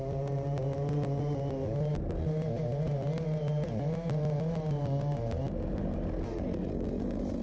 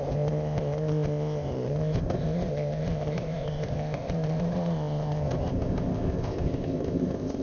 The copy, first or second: second